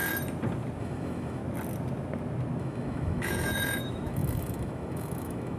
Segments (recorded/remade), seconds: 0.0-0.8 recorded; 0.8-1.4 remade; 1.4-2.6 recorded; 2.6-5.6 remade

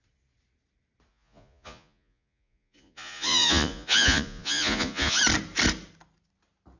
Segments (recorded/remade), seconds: 0.0-1.1 recorded; 1.1-5.2 remade; 5.2-6.8 recorded

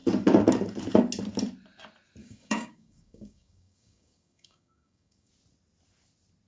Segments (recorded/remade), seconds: 0.0-2.2 recorded; 2.2-5.3 remade; 5.3-6.5 recorded

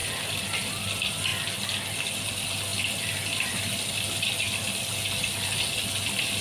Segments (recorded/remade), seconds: 0.0-6.4 recorded

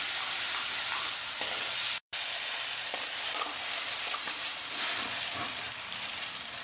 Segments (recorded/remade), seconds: 0.0-6.6 remade

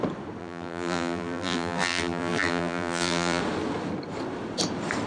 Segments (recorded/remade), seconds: 0.0-0.4 recorded; 0.4-3.4 remade; 3.4-5.1 recorded